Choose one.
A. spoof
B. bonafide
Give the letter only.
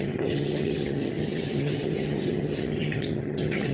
A